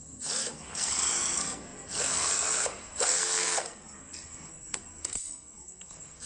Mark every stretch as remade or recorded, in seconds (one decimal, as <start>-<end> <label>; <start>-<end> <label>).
0.0-6.3 remade